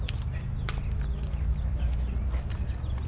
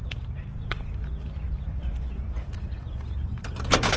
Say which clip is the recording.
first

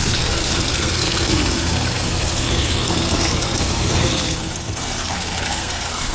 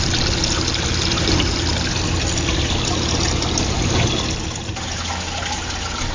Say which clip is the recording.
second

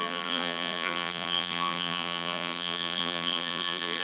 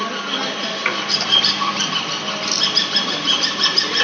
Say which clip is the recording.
second